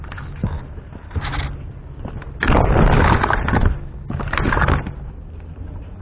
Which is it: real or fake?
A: real